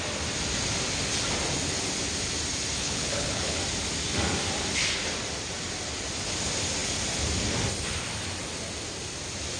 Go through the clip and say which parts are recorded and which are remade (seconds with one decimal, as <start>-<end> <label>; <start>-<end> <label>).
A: 0.0-2.8 recorded; 2.8-3.6 remade; 3.6-9.6 recorded